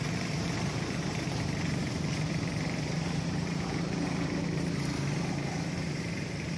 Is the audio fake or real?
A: fake